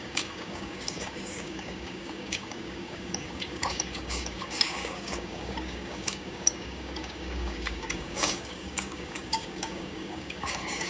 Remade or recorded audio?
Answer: remade